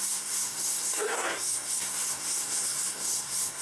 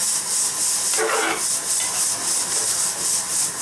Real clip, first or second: second